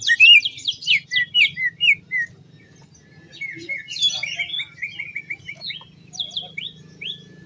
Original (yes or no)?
yes